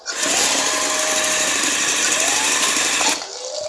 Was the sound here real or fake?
real